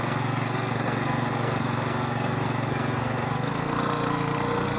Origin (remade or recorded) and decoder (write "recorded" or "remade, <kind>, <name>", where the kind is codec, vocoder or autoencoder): remade, codec, SNAC